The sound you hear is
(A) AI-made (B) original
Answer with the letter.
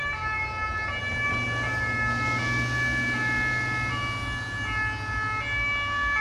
B